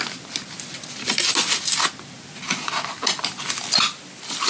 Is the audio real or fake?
real